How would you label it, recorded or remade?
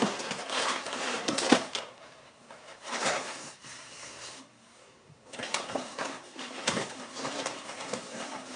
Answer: remade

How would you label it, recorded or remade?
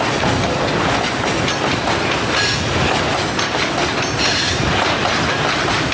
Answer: recorded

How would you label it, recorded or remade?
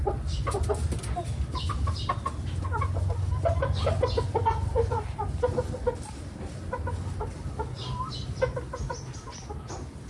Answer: recorded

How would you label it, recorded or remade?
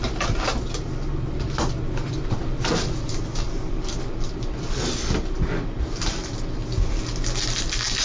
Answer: recorded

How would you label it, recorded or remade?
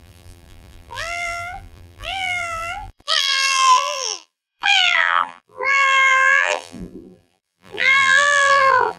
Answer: remade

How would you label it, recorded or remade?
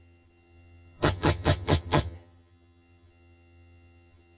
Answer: remade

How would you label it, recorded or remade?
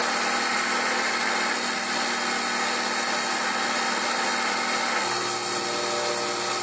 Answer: recorded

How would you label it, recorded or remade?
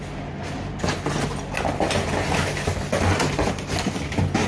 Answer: recorded